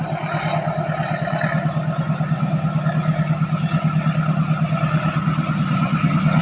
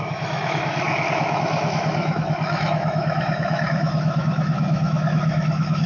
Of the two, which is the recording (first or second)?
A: first